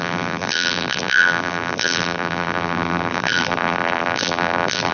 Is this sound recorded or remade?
remade